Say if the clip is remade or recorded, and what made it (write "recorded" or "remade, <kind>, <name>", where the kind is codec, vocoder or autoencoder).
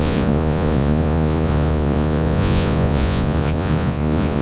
remade, vocoder, Vocos